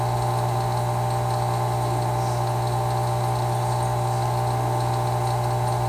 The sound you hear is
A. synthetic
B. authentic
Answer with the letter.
B